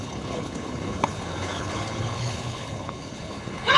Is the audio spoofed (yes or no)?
yes